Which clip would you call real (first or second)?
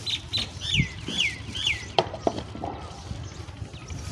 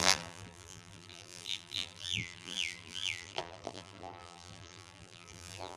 first